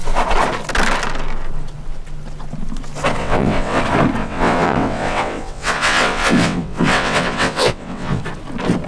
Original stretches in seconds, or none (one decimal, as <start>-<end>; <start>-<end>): 0.0-3.2; 3.8-4.2; 8.2-8.9